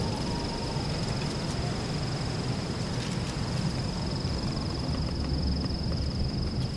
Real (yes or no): yes